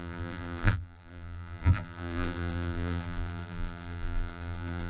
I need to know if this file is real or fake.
fake